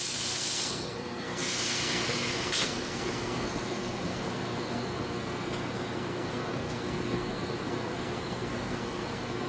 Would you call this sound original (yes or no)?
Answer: no